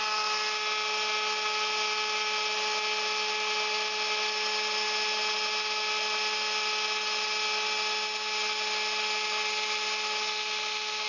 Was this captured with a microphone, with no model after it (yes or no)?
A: yes